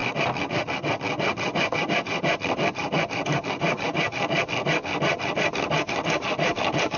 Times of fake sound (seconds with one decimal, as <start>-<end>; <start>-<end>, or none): 1.8-7.0